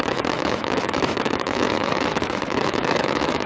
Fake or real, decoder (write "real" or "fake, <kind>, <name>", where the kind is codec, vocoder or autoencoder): fake, autoencoder, DAC-VAE